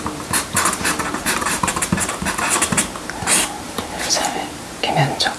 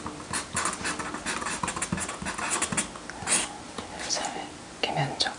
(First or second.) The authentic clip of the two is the second